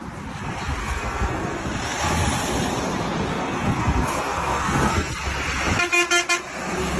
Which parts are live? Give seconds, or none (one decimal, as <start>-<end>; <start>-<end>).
0.0-0.8; 1.6-3.3; 5.1-7.0